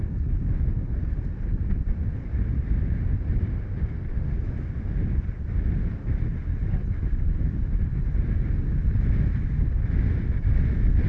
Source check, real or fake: real